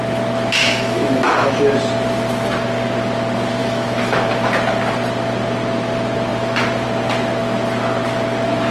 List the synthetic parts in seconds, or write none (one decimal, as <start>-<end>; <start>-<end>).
0.6-1.5; 3.6-4.3